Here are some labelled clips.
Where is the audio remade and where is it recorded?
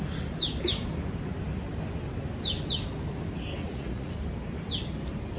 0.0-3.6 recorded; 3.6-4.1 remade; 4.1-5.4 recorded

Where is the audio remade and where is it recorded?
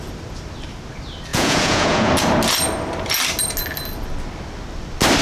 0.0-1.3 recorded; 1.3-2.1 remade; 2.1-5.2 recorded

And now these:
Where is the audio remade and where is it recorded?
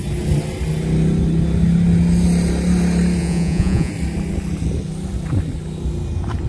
0.0-3.2 recorded; 3.2-3.9 remade; 3.9-6.5 recorded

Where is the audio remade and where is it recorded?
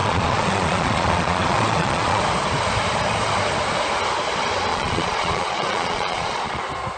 0.0-2.2 remade; 2.2-4.7 recorded; 4.7-6.6 remade; 6.6-7.0 recorded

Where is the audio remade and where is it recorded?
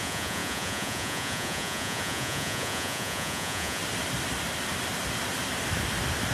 0.0-3.8 remade; 3.8-6.3 recorded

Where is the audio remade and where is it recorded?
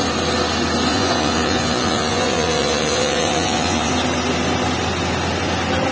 0.0-0.9 recorded; 0.9-3.9 remade; 3.9-5.9 recorded